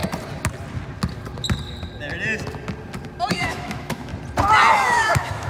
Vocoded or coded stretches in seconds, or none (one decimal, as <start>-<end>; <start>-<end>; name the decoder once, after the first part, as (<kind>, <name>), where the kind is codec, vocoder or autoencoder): 3.3-4.1 (autoencoder, DAC-VAE); 4.7-5.5